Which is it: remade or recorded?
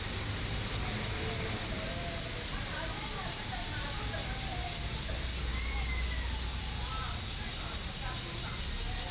recorded